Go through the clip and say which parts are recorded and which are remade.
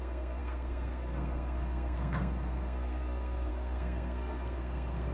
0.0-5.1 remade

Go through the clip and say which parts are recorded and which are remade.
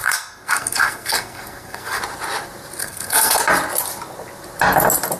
0.0-2.0 remade; 2.0-2.8 recorded; 2.8-3.4 remade; 3.4-5.2 recorded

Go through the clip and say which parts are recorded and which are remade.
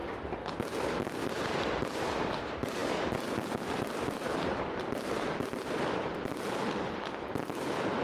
0.0-8.0 recorded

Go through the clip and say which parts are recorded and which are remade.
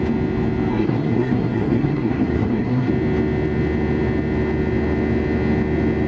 0.0-0.7 recorded; 0.7-2.9 remade; 2.9-6.1 recorded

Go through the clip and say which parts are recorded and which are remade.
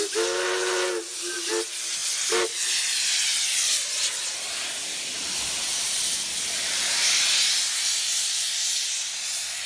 0.0-9.7 recorded